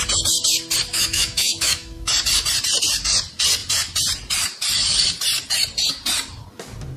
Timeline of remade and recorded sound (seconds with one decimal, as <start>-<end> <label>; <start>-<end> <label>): 0.0-0.9 recorded; 0.9-2.1 remade; 2.1-7.0 recorded